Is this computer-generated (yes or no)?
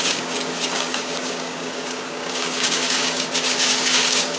yes